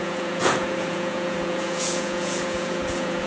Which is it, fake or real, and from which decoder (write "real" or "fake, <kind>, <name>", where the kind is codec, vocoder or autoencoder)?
fake, vocoder, Vocos